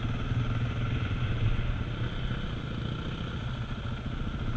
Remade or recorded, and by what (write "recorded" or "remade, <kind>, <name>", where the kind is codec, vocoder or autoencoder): recorded